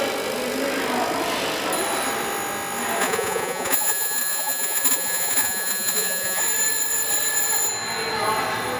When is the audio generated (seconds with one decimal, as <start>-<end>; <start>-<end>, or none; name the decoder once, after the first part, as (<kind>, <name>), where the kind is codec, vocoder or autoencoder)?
3.0-6.4 (vocoder, Vocos)